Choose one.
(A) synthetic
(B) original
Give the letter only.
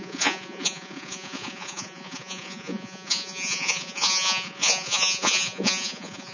A